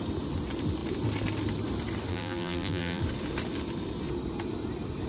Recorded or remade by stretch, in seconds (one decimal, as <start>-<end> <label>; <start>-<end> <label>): 0.0-2.1 recorded; 2.1-3.0 remade; 3.0-5.1 recorded